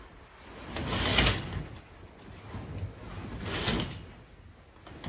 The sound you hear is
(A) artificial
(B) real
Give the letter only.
B